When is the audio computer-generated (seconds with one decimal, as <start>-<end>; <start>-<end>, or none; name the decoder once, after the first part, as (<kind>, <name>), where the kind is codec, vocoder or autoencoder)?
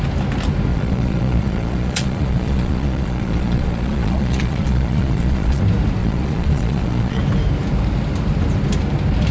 0.7-5.6 (vocoder, Vocos); 6.0-7.2